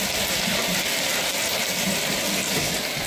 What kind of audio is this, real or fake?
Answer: real